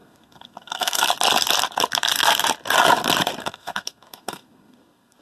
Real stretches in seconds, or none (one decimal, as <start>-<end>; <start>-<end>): 1.1-3.4

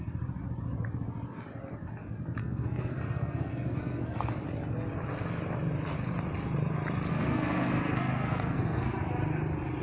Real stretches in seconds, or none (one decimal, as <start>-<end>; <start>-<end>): 0.0-2.4; 4.3-7.1; 9.0-9.8